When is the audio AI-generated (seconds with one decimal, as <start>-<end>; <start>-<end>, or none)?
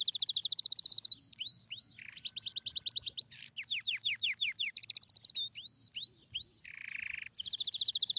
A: none